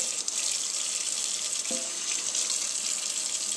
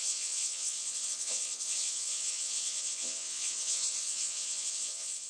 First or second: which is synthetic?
second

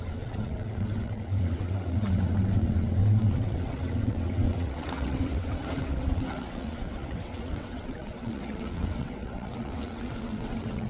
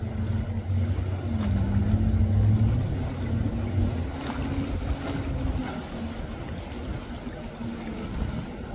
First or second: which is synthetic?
first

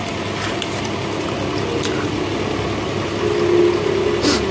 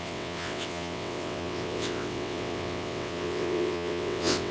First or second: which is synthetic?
second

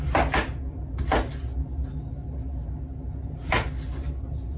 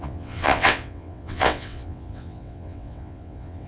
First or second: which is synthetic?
second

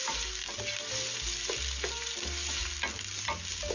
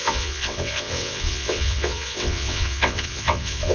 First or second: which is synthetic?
second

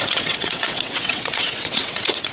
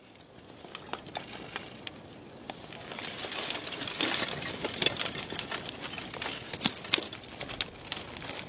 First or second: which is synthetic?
first